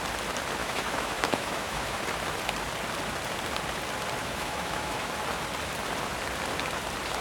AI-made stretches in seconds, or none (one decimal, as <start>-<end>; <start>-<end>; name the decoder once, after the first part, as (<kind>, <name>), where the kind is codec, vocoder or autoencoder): 0.6-2.0 (autoencoder, DAC-VAE); 4.2-5.1